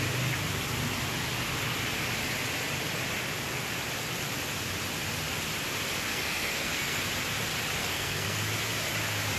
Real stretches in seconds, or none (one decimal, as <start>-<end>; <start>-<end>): 0.0-6.1; 7.0-7.8; 8.4-9.4